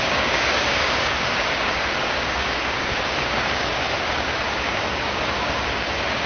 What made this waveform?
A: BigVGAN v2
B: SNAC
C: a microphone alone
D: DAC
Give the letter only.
D